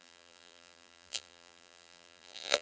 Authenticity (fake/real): fake